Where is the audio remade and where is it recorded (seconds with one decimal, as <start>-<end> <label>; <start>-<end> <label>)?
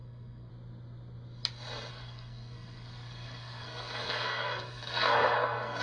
0.0-0.5 remade; 0.5-1.9 recorded; 1.9-5.8 remade